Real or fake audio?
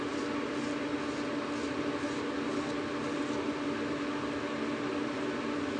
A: real